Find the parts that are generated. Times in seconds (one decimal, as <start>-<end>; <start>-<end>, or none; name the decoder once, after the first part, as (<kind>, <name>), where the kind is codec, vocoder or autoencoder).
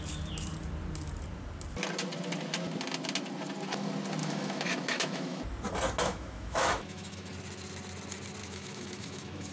4.2-5.4 (autoencoder, DAC-VAE); 6.0-7.3; 8.4-9.5